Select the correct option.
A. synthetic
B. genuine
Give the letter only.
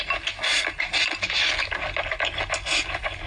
B